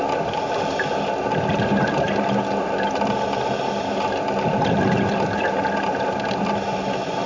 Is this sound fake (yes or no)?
no